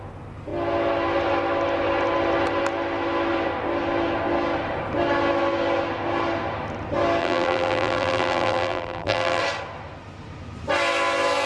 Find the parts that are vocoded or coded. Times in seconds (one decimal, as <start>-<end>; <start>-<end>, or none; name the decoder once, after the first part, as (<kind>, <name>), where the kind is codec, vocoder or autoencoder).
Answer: 7.2-9.4 (vocoder, BigVGAN v2)

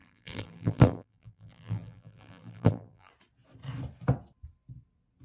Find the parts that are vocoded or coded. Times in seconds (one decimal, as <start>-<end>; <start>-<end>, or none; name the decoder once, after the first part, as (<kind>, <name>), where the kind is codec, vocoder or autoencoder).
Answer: 0.0-3.1 (vocoder, BigVGAN v2)

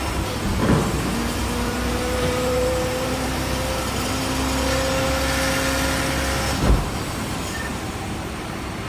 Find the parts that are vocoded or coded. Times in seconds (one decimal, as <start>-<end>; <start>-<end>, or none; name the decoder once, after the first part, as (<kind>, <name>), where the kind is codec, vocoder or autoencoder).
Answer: 0.6-4.1 (vocoder, BigVGAN v2); 7.7-8.5

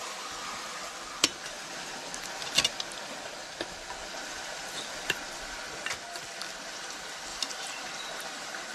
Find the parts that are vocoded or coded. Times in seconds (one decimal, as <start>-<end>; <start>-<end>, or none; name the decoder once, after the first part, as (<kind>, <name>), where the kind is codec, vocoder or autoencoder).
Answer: 7.3-8.0 (vocoder, BigVGAN v2)